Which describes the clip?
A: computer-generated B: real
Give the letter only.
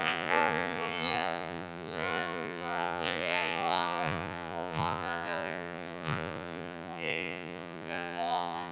A